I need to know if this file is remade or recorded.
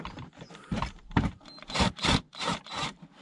remade